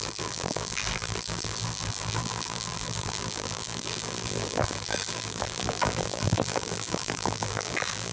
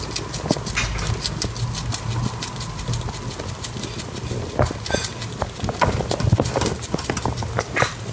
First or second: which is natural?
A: second